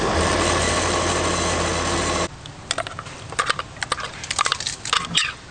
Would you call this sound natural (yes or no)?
yes